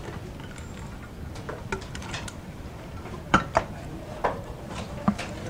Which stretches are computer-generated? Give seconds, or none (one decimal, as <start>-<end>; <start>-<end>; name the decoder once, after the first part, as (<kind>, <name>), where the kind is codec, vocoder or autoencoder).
2.0-5.5 (vocoder, BigVGAN v2)